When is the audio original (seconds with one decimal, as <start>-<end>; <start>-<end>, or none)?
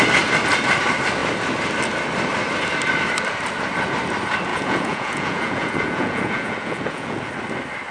0.0-4.5; 7.3-7.9